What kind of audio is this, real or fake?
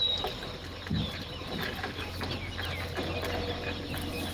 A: real